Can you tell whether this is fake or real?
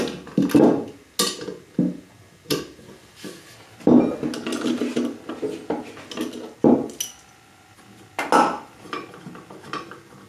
real